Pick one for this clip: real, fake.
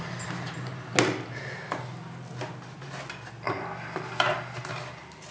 real